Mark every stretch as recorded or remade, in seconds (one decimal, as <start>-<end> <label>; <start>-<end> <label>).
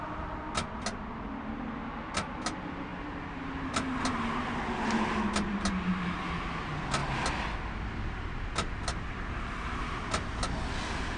0.0-11.2 recorded